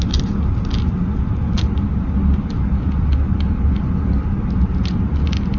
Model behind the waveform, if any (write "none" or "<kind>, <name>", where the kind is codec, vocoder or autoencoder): none